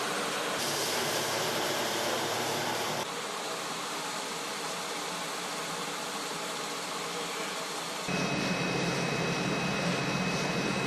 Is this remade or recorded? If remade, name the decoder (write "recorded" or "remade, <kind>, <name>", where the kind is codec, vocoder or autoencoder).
remade, vocoder, BigVGAN v2